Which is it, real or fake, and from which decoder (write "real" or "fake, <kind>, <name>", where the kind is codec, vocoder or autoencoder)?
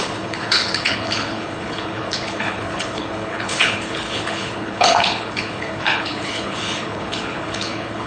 fake, codec, HILCodec